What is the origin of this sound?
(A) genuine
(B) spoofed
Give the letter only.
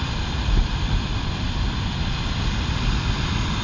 A